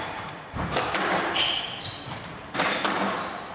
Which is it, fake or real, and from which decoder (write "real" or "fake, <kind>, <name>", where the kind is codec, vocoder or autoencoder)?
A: fake, vocoder, BigVGAN v2